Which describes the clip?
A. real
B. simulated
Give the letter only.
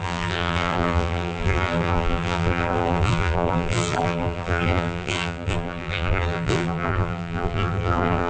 B